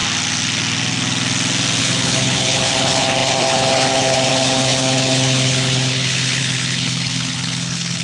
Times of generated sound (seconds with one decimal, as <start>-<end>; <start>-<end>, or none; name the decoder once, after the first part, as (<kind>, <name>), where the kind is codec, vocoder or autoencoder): 1.8-8.0 (codec, HILCodec)